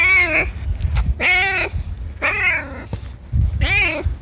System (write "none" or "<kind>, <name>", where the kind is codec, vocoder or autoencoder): none